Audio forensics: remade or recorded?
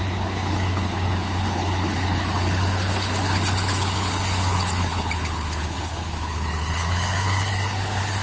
remade